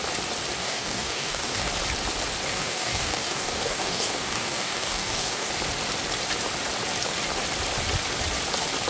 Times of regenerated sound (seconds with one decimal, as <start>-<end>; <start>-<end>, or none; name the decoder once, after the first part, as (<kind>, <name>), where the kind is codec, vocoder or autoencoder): 0.6-1.7 (codec, DAC); 2.5-5.5